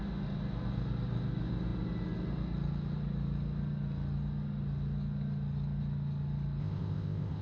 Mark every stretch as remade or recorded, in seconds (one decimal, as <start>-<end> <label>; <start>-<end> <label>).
0.0-6.6 recorded; 6.6-7.4 remade

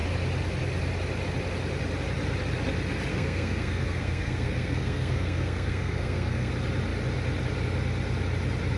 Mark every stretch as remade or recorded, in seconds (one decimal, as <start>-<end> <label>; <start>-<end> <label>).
0.0-3.1 recorded; 3.1-6.5 remade; 6.5-8.8 recorded

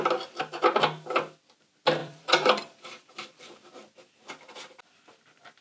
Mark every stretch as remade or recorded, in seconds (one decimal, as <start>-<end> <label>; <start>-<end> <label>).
0.0-2.0 recorded; 2.0-3.4 remade; 3.4-5.6 recorded

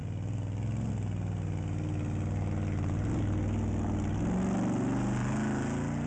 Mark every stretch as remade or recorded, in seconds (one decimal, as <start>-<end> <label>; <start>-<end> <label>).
0.0-6.1 recorded